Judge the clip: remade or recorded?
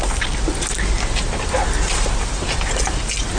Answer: recorded